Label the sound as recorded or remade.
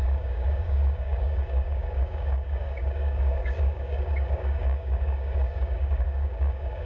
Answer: remade